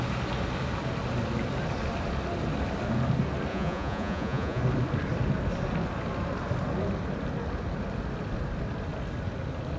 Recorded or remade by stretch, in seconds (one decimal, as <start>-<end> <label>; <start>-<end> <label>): 0.0-3.5 recorded; 3.5-4.6 remade; 4.6-9.8 recorded